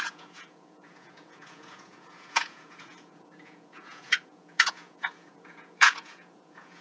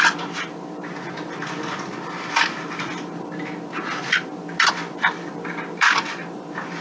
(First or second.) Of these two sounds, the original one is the second